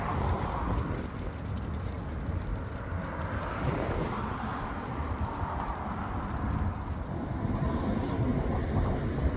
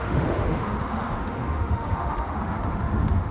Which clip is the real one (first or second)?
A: first